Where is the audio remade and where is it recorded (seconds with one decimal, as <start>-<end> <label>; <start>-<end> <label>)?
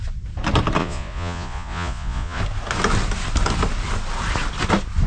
0.0-0.8 recorded; 0.8-2.4 remade; 2.4-5.1 recorded